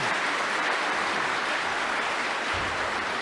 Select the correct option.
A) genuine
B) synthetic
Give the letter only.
B